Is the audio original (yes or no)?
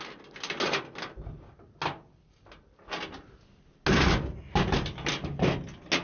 yes